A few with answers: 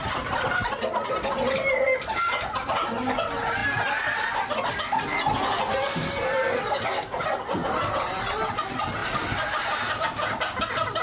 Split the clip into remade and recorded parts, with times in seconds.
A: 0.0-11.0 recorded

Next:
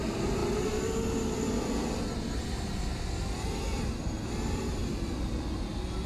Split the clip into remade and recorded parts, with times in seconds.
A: 0.0-6.1 recorded

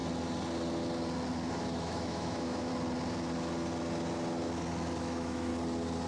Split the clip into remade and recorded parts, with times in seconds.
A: 0.0-1.5 recorded; 1.5-2.7 remade; 2.7-5.0 recorded; 5.0-5.5 remade; 5.5-6.1 recorded